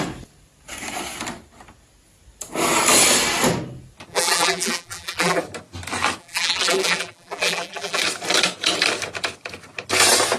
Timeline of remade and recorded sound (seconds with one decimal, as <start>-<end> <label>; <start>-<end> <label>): 0.0-4.1 recorded; 4.1-5.4 remade; 5.4-6.2 recorded; 6.2-8.0 remade; 8.0-10.4 recorded